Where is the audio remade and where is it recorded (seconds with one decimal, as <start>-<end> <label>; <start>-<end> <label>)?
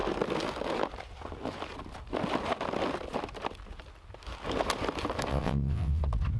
0.0-5.3 recorded; 5.3-6.0 remade; 6.0-6.4 recorded